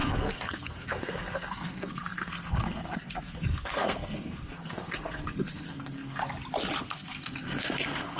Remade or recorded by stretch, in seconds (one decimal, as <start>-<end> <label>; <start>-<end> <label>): 0.0-6.2 remade; 6.2-6.8 recorded; 6.8-8.2 remade